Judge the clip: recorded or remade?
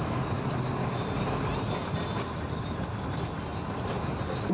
recorded